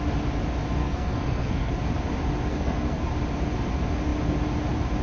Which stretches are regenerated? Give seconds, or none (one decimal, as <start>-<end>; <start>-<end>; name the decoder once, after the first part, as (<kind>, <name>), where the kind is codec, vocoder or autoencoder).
0.8-1.7 (codec, SNAC); 2.5-3.0